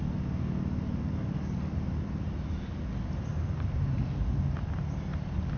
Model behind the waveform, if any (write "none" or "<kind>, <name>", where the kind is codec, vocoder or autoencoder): none